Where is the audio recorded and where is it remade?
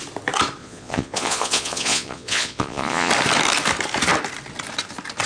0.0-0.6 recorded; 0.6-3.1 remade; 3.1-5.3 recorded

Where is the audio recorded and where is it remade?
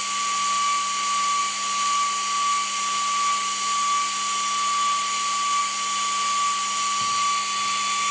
0.0-8.1 recorded